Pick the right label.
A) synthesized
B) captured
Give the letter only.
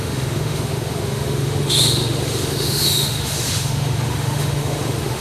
A